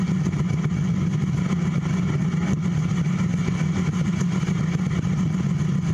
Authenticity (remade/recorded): recorded